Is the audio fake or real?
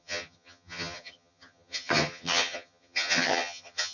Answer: fake